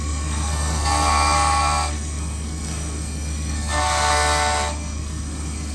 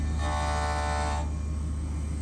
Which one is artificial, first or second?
first